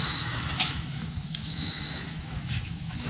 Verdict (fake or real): fake